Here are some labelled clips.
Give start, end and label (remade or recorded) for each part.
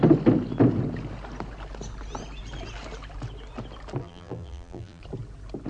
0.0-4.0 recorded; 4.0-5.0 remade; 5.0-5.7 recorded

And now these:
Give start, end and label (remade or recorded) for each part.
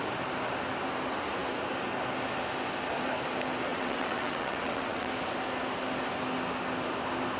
0.0-3.7 recorded; 3.7-5.1 remade; 5.1-7.4 recorded